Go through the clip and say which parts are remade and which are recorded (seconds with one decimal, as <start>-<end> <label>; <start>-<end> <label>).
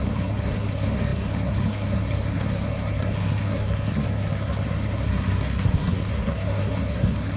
0.0-7.4 remade